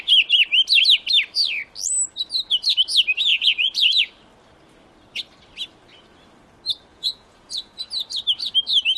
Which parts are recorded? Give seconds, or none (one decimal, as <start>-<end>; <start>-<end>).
0.0-3.3; 4.1-6.9; 7.8-9.0